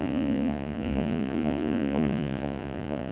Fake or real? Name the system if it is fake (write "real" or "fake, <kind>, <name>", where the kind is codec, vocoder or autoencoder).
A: fake, vocoder, Vocos